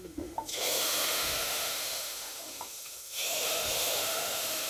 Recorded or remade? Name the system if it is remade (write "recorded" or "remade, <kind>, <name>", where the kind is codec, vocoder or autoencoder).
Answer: remade, autoencoder, DAC-VAE